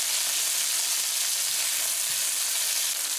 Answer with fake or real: real